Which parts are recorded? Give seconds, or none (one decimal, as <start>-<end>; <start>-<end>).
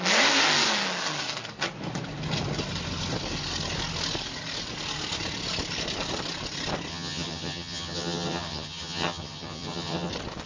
0.0-6.9; 10.1-10.5